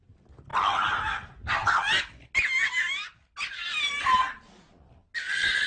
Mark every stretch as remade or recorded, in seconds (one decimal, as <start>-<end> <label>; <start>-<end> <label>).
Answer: 0.0-5.7 recorded